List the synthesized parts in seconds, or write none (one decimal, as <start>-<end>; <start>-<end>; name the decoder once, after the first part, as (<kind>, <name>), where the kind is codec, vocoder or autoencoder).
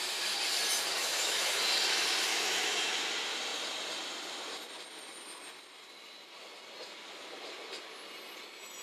1.0-1.6 (autoencoder, DAC-VAE); 2.3-3.0